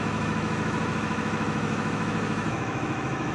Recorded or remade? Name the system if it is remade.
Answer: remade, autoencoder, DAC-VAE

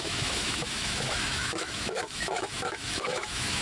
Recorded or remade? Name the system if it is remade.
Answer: remade, autoencoder, DAC-VAE